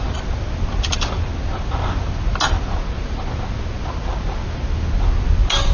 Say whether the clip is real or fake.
real